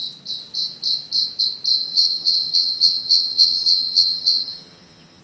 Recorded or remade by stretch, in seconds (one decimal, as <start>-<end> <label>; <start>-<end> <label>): 0.0-1.8 recorded; 1.8-5.2 remade

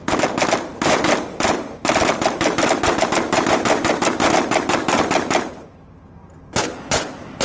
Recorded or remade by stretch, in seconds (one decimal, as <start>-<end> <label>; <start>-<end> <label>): 0.0-7.4 recorded

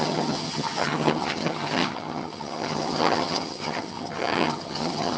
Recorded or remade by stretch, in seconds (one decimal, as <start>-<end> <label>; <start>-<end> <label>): 0.0-5.2 remade